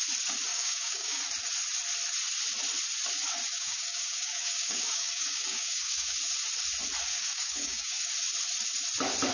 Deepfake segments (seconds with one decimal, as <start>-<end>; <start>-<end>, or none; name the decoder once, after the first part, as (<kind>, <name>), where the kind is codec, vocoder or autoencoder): 0.5-1.2 (codec, DAC); 3.5-6.2; 7.1-8.1